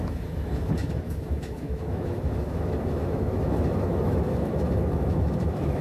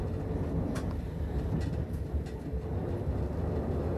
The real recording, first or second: second